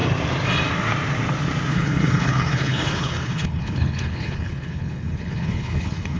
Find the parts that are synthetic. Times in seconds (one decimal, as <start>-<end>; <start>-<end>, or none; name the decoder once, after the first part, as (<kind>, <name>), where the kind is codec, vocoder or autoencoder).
1.7-6.2 (codec, HILCodec)